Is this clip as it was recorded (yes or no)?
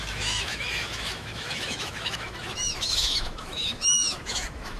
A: no